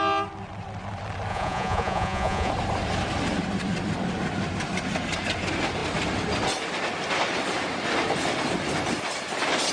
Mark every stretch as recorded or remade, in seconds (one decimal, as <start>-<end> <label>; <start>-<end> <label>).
0.0-1.3 recorded; 1.3-2.5 remade; 2.5-9.7 recorded